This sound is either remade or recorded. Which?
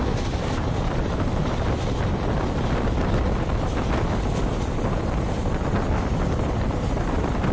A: recorded